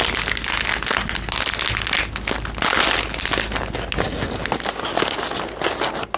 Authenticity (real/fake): real